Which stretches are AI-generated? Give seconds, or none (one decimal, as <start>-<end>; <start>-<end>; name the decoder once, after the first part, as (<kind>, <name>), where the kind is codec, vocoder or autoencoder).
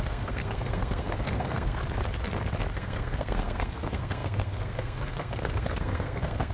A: 0.0-1.8 (codec, SNAC); 2.7-6.5